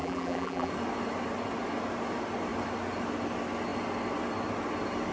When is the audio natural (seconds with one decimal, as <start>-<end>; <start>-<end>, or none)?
0.7-5.1